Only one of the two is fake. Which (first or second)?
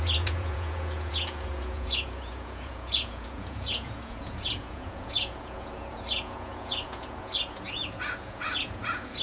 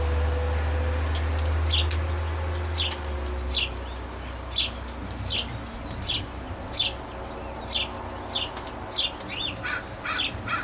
first